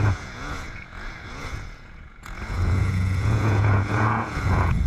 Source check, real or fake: fake